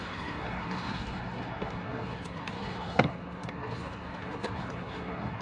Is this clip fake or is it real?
fake